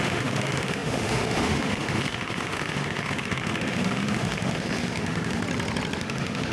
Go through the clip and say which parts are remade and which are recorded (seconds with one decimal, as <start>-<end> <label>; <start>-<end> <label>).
0.0-5.4 remade; 5.4-6.0 recorded; 6.0-6.5 remade